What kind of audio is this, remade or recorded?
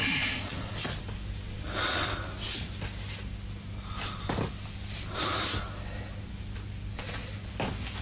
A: recorded